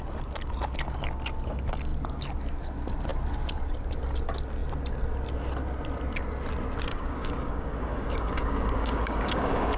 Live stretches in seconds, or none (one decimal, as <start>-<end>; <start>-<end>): 0.0-6.9